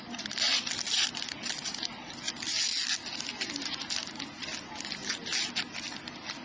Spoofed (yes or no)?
no